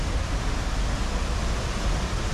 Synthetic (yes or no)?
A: no